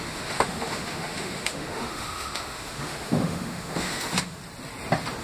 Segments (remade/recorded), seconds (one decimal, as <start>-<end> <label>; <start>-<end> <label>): 0.0-4.4 remade; 4.4-5.2 recorded

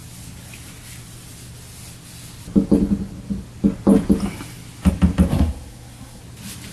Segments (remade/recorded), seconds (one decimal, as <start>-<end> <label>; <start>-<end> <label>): 0.0-5.3 recorded; 5.3-6.2 remade; 6.2-6.7 recorded

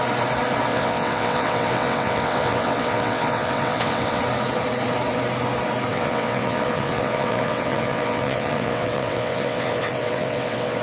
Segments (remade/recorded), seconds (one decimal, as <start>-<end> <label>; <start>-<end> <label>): 0.0-0.7 recorded; 0.7-4.2 remade; 4.2-5.9 recorded; 5.9-10.8 remade

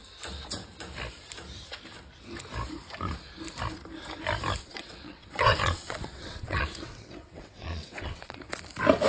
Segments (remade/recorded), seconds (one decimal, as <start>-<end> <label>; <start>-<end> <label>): 0.0-4.6 recorded; 4.6-8.5 remade; 8.5-9.1 recorded

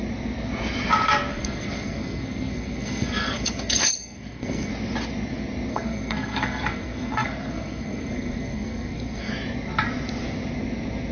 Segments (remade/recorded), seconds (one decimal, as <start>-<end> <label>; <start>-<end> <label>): 0.0-1.3 recorded; 1.3-4.7 remade; 4.7-5.7 recorded; 5.7-9.3 remade; 9.3-11.1 recorded

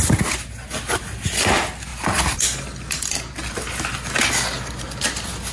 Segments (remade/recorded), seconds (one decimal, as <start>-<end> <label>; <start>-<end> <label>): 0.0-5.5 recorded

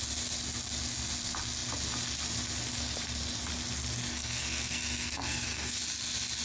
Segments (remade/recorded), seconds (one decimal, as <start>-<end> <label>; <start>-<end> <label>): 0.0-4.1 recorded; 4.1-5.8 remade; 5.8-6.4 recorded

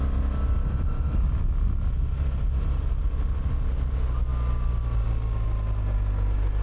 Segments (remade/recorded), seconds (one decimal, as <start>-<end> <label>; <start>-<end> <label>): 0.0-6.6 recorded